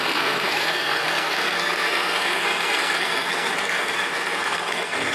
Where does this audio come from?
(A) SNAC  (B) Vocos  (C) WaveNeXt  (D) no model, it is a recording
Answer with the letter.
A